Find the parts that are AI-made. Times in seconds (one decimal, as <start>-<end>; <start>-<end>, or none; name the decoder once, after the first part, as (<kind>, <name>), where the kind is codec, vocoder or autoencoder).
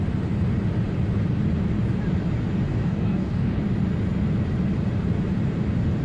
2.7-3.6 (codec, DAC)